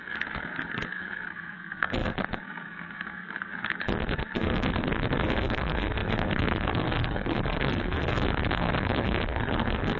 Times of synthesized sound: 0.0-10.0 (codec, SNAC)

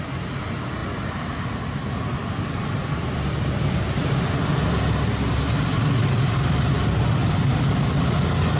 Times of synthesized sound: none